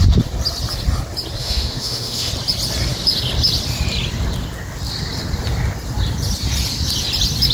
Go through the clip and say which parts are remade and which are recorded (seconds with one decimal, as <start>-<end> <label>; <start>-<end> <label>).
0.0-1.4 recorded; 1.4-2.3 remade; 2.3-7.5 recorded